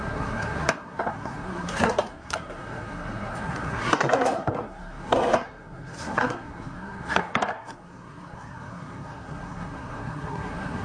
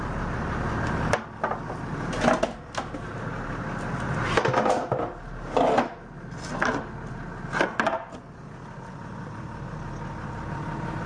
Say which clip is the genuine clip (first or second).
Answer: second